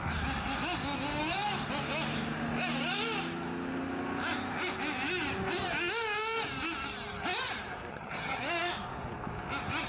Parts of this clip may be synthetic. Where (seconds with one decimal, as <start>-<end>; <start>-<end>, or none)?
7.9-8.4

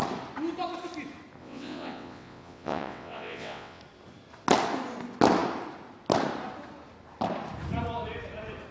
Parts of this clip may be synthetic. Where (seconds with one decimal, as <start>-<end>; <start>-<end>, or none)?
1.4-3.8